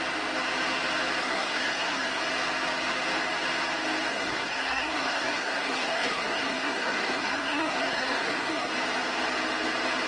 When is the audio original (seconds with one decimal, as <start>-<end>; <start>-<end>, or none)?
0.0-1.2; 2.2-4.1; 8.7-10.1